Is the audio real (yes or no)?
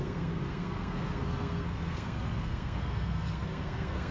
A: no